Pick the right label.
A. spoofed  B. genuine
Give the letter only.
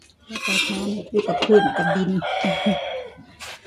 B